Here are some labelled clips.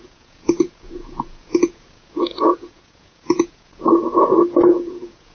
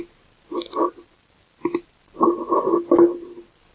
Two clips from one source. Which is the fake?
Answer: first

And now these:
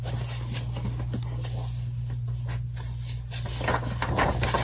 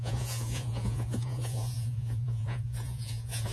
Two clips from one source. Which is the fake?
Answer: second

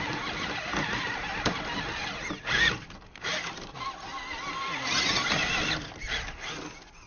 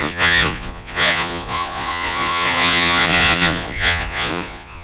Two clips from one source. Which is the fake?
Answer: second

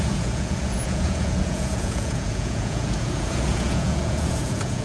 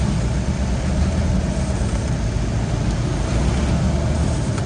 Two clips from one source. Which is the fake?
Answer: first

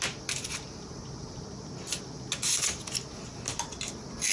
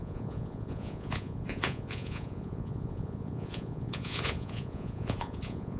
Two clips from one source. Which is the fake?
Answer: second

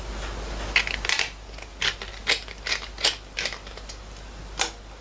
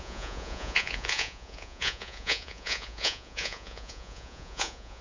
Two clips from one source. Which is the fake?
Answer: second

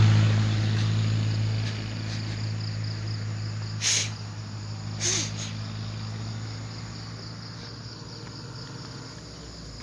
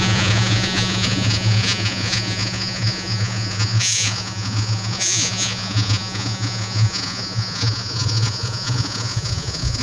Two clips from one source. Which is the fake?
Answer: second